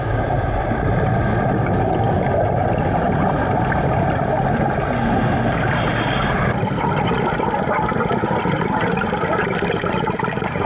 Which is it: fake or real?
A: real